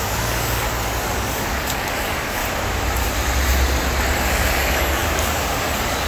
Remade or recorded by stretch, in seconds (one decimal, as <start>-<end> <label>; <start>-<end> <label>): 0.0-2.4 remade; 2.4-4.3 recorded; 4.3-6.1 remade